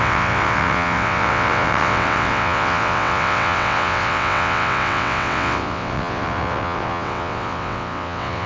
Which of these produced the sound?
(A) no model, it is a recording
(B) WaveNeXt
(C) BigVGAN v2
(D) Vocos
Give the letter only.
B